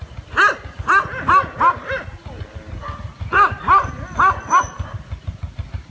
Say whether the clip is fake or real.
real